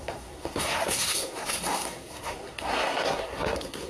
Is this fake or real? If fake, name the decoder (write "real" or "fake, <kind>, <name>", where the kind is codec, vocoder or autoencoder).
fake, codec, SNAC